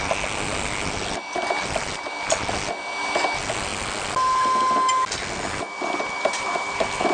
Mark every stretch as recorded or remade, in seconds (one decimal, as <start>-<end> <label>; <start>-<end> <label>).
0.0-7.1 recorded